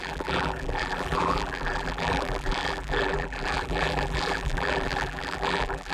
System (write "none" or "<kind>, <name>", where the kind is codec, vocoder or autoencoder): vocoder, BigVGAN v2